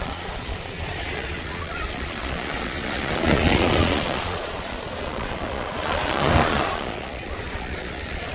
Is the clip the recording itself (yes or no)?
no